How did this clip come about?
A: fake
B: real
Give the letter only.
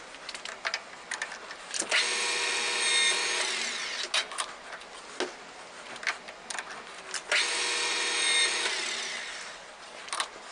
B